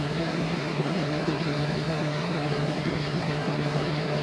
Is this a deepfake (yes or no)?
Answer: yes